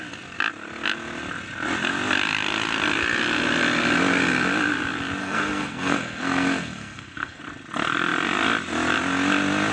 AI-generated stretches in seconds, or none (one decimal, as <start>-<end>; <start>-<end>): 5.2-7.4